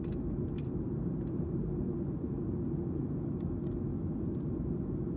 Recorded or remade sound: recorded